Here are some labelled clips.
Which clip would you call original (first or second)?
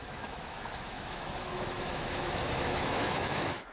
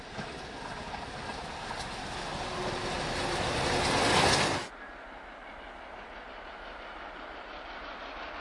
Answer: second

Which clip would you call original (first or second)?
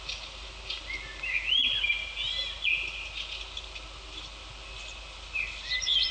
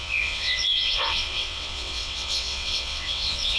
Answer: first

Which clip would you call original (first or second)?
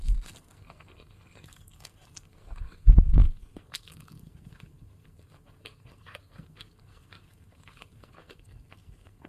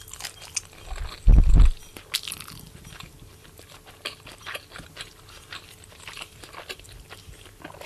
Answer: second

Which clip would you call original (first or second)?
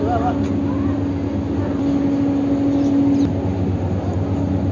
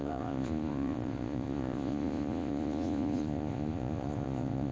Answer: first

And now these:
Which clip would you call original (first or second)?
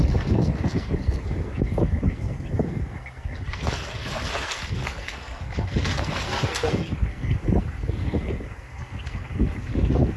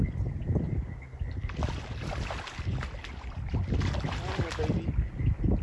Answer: second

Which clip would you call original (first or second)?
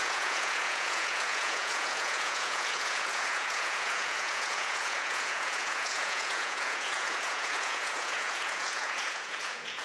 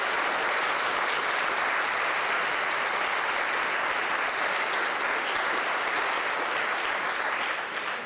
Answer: second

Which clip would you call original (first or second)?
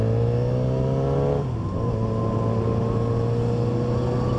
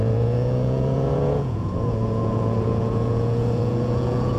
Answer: first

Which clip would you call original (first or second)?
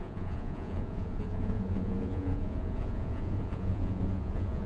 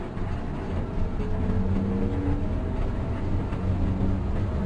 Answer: second